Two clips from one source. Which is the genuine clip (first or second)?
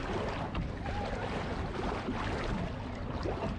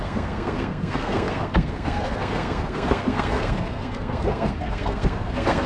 first